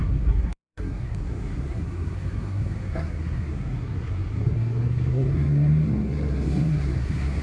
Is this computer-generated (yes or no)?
yes